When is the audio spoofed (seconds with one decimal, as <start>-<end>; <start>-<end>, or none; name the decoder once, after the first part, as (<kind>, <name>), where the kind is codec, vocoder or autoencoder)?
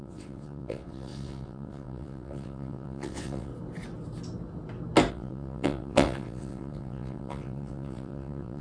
0.0-3.5 (vocoder, WaveNeXt); 5.1-8.6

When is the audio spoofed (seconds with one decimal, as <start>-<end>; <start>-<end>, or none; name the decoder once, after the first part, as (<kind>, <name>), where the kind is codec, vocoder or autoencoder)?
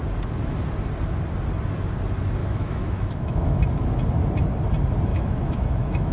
2.4-3.6 (autoencoder, DAC-VAE); 5.1-6.1